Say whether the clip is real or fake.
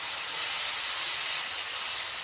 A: real